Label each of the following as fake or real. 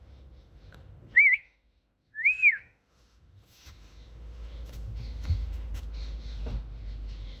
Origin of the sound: fake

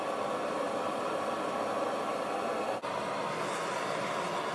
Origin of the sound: real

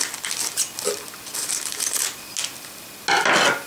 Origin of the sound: real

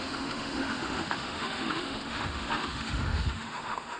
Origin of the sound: fake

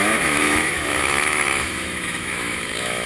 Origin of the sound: fake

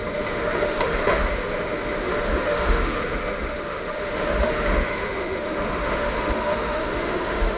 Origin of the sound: fake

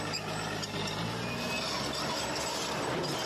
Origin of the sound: real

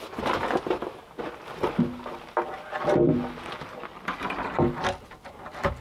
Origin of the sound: real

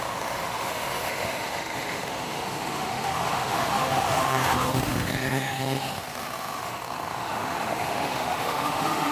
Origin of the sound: fake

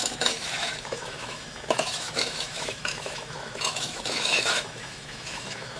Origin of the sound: fake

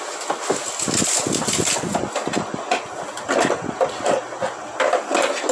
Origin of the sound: real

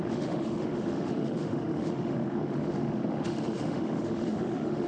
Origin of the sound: fake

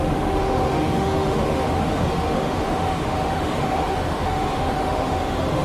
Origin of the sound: fake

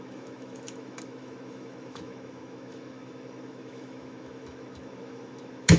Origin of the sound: fake